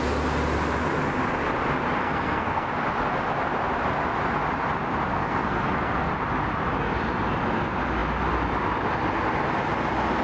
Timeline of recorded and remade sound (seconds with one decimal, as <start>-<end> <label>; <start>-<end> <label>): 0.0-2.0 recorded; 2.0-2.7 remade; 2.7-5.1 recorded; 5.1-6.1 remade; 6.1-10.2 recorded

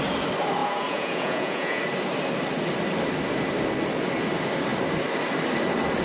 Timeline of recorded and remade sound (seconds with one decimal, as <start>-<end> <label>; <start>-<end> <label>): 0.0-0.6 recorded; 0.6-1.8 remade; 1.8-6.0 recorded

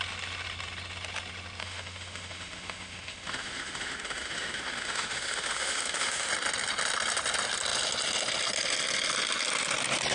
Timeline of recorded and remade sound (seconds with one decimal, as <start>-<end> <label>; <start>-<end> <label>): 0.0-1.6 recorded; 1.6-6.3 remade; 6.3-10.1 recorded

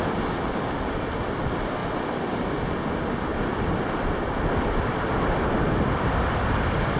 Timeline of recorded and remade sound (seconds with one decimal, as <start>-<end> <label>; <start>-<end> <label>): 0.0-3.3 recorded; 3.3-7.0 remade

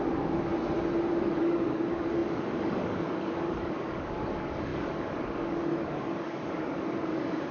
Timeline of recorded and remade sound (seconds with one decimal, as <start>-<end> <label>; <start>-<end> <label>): 0.0-0.5 remade; 0.5-1.1 recorded; 1.1-7.5 remade